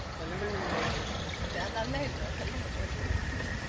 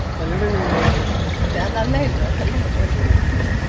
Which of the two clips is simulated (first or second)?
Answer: first